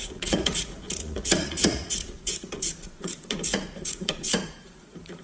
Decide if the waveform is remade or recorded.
remade